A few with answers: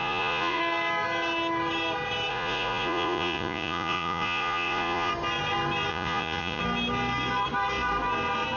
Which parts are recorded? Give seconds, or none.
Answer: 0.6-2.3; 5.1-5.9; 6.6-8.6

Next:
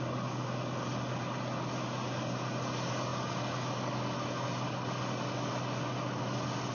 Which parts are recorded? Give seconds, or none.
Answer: 0.0-6.7

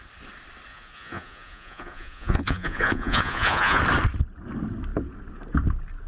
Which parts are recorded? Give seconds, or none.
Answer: 0.0-0.7; 3.8-6.1

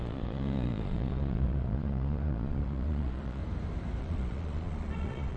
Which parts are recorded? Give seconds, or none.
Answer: 3.4-4.0

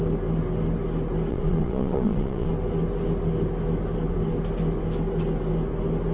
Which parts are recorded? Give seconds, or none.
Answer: 0.0-1.3; 2.5-6.1

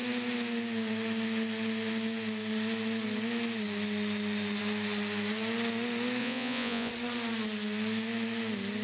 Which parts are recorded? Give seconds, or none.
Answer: 0.0-6.2; 6.9-8.8

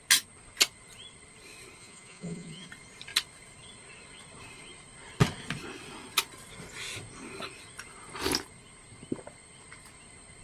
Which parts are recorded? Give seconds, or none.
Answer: 0.0-1.8; 2.7-10.4

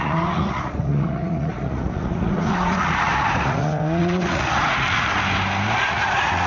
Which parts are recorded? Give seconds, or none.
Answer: 5.1-5.8